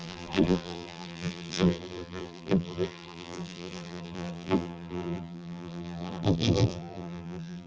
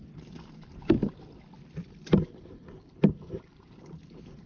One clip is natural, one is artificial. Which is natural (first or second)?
second